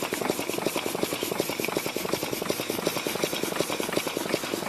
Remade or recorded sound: recorded